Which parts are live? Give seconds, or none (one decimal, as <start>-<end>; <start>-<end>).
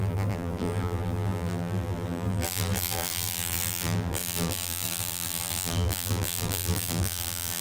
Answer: none